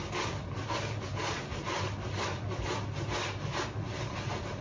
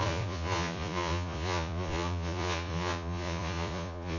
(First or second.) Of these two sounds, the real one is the first